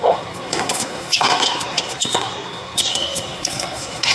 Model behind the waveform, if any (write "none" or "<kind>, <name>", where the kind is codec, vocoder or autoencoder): codec, SNAC